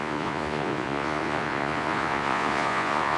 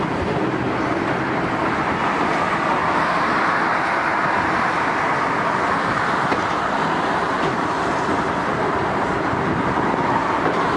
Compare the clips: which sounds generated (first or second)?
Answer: first